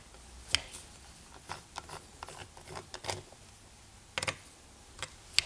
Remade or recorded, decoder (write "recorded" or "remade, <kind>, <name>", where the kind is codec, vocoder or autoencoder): recorded